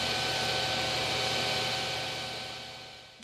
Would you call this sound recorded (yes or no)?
no